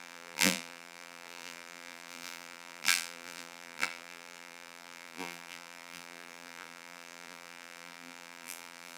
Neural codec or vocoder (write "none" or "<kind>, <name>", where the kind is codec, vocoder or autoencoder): vocoder, BigVGAN v2